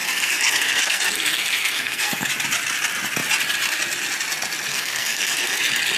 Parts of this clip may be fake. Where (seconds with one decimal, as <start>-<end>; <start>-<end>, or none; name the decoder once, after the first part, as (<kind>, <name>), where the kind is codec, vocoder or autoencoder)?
0.0-2.3 (codec, SNAC); 4.7-5.6